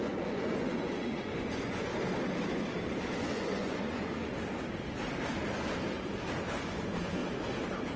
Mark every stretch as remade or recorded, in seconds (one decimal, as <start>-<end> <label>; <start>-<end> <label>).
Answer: 0.0-1.9 remade; 1.9-3.2 recorded; 3.2-4.3 remade; 4.3-6.6 recorded; 6.6-7.2 remade; 7.2-8.0 recorded